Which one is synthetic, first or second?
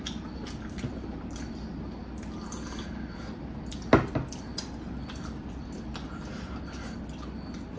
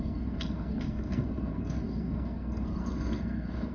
second